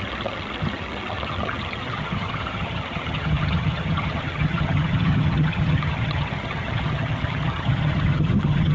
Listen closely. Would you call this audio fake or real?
fake